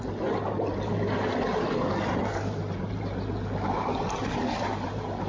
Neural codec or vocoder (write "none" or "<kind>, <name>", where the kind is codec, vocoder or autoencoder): none